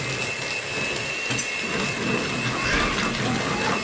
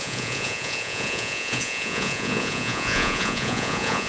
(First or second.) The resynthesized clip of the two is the second